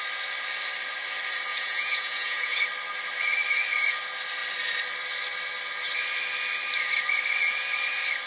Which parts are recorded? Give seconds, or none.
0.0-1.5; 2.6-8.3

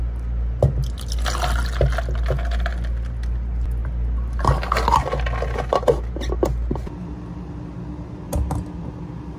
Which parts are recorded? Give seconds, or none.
0.0-9.4

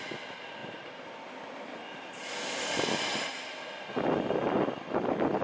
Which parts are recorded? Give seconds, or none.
0.0-5.4

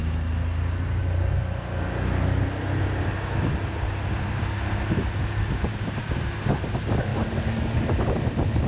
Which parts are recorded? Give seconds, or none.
0.0-8.7

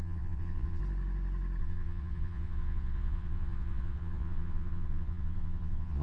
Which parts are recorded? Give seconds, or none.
0.8-1.6